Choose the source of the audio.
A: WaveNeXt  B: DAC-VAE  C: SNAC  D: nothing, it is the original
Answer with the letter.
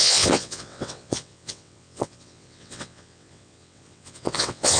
A